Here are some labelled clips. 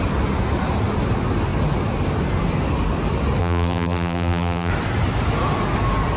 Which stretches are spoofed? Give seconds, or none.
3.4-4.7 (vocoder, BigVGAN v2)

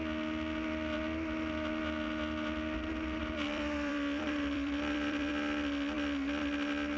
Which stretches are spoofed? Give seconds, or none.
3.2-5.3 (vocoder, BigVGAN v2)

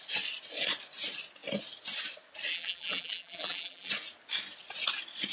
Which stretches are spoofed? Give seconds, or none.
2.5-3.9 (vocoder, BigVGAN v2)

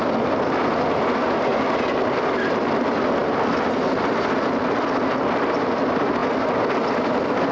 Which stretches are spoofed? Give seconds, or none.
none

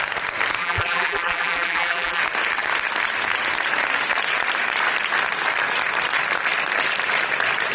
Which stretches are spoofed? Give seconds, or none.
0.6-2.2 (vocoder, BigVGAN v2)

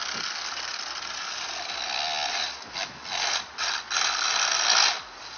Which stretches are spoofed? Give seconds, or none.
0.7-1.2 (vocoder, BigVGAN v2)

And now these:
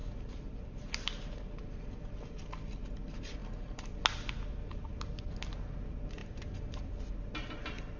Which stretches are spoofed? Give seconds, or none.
0.0-1.8 (vocoder, BigVGAN v2); 3.4-3.9; 6.2-6.9

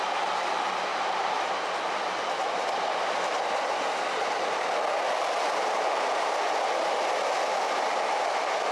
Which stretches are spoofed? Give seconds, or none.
0.9-2.6 (vocoder, BigVGAN v2)